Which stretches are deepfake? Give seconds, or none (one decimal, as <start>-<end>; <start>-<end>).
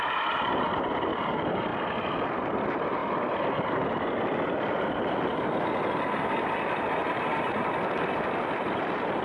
7.0-8.7